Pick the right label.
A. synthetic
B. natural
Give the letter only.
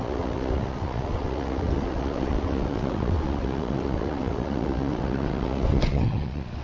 A